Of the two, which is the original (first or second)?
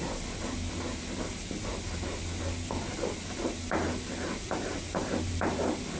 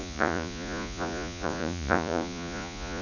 first